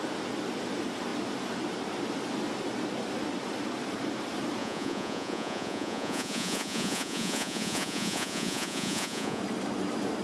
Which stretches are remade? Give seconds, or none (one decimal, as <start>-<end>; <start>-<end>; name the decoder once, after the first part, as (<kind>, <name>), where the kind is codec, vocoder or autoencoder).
4.6-9.4 (vocoder, Vocos)